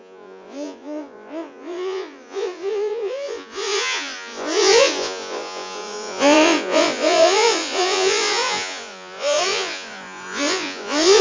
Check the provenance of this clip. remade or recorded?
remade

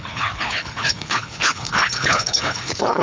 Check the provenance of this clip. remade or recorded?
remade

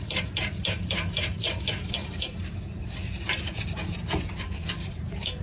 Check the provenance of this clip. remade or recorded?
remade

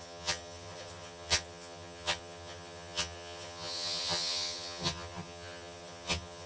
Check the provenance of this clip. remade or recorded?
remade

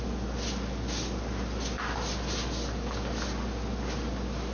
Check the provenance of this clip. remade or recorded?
recorded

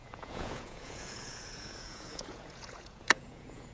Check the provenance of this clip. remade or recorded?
remade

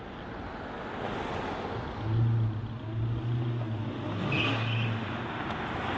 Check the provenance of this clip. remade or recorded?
recorded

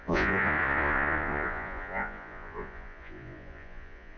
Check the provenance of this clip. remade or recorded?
remade